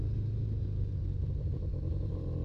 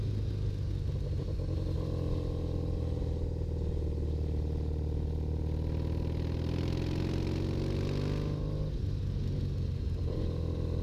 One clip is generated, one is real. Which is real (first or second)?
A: second